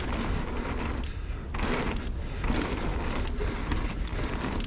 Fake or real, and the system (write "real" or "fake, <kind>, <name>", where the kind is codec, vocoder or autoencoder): real